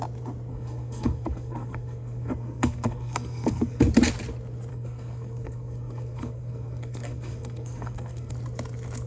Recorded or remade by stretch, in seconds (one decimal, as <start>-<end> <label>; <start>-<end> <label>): 0.0-0.5 recorded; 0.5-3.8 remade; 3.8-4.7 recorded; 4.7-8.3 remade; 8.3-9.1 recorded